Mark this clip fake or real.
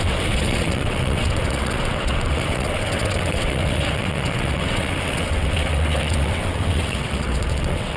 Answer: fake